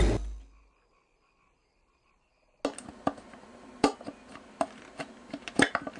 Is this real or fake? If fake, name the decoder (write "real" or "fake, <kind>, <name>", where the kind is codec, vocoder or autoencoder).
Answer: real